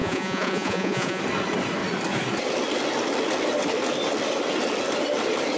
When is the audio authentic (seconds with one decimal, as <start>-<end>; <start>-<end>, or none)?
1.2-5.6